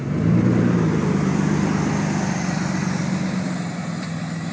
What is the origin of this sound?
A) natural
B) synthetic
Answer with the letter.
B